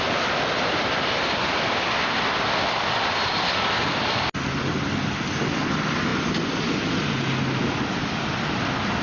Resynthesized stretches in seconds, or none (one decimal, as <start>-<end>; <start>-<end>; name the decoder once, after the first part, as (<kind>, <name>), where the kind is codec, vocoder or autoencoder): none